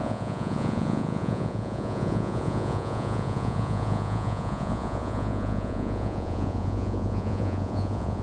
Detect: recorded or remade remade